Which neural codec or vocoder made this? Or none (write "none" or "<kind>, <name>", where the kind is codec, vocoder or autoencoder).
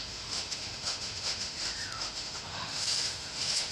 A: autoencoder, DAC-VAE